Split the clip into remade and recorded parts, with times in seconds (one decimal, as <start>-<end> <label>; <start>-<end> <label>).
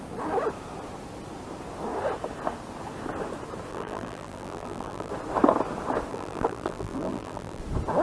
0.0-3.7 recorded; 3.7-5.1 remade; 5.1-6.1 recorded; 6.1-7.6 remade; 7.6-8.0 recorded